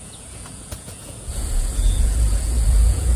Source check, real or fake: fake